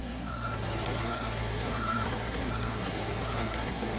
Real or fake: fake